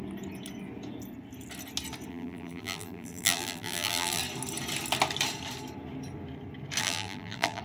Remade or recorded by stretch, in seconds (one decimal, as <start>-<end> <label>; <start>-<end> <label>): 0.0-2.1 recorded; 2.1-4.2 remade; 4.2-6.8 recorded; 6.8-7.6 remade